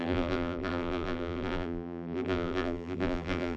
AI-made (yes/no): yes